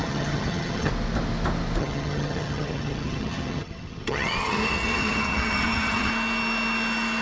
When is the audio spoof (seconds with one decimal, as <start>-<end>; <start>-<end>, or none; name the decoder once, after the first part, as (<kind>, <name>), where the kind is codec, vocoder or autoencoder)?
0.0-0.9 (vocoder, HiFi-GAN); 1.8-6.1